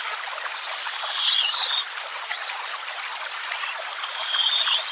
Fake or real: real